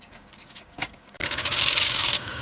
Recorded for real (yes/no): no